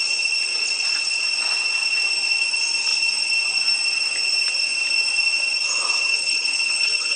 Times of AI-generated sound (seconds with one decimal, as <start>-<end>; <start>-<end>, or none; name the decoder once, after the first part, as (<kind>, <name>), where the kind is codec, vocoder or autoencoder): 6.1-7.2 (codec, HILCodec)